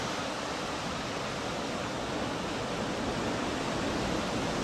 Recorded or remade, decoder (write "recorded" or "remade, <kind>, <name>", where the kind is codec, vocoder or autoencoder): recorded